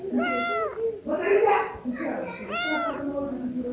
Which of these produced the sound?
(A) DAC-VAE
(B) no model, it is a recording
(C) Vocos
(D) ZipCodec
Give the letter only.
B